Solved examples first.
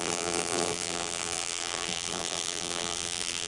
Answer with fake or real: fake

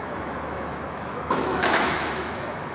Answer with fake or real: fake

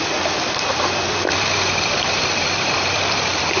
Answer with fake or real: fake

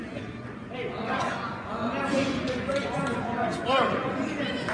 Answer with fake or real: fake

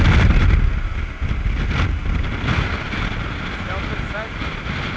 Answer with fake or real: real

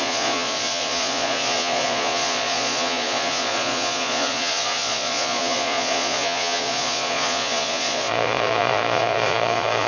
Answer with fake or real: fake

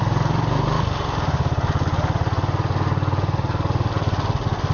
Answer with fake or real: real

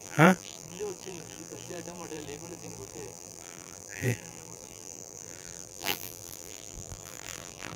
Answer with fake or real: fake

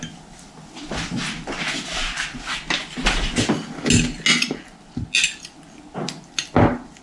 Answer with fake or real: real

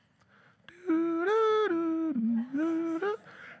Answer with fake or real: real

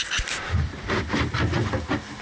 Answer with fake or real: real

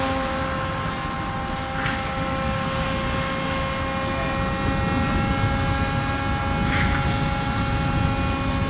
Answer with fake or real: real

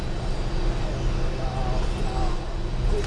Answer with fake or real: real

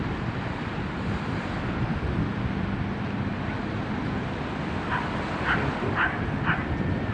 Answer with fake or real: real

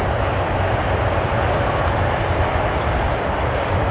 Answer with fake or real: real